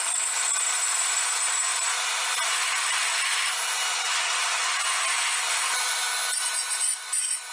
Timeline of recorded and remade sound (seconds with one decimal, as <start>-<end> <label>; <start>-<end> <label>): 0.0-3.9 recorded; 3.9-4.8 remade; 4.8-7.5 recorded